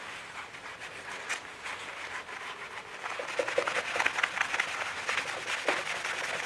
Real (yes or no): yes